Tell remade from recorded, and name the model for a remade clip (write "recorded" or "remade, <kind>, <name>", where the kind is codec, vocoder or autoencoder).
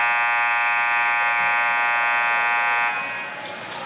recorded